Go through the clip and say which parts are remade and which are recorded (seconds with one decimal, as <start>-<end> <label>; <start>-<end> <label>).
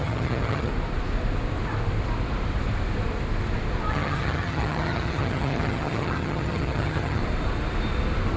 0.0-0.7 remade; 0.7-3.9 recorded; 3.9-7.2 remade; 7.2-8.4 recorded